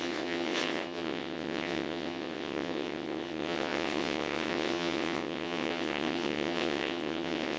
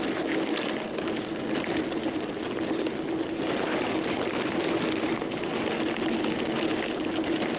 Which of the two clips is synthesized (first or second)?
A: first